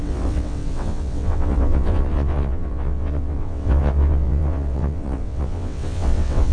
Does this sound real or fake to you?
fake